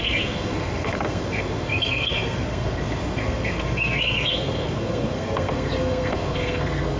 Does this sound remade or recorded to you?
remade